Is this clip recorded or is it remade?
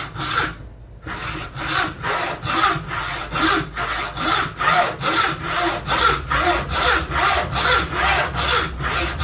recorded